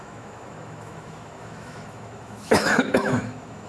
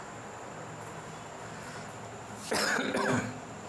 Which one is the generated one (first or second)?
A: first